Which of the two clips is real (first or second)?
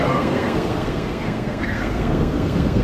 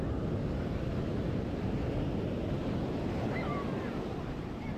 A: second